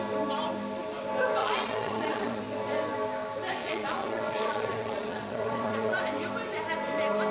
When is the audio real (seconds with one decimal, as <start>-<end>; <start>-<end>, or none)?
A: 0.0-1.4; 2.4-3.6; 6.0-7.3